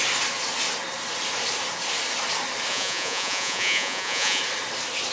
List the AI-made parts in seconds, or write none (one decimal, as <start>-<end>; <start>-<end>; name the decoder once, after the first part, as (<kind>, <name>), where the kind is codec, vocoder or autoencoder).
2.7-4.4 (vocoder, Vocos)